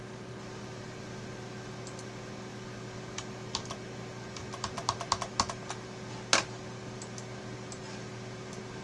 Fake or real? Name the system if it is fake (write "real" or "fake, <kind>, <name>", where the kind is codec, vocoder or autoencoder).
real